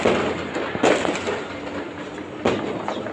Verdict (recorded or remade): recorded